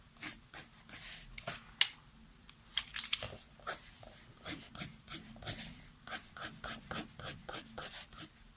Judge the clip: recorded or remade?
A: recorded